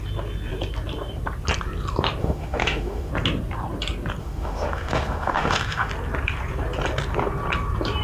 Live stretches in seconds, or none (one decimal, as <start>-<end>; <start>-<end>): 0.0-2.2; 3.1-4.2; 5.9-8.0